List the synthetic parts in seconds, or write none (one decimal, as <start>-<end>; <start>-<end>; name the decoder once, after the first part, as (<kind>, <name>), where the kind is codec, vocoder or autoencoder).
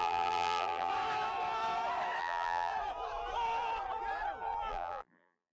0.0-0.9 (vocoder, BigVGAN v2); 2.2-2.7; 4.7-5.5